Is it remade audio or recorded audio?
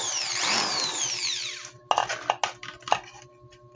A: recorded